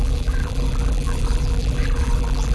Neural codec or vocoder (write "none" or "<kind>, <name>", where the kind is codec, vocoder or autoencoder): vocoder, BigVGAN v2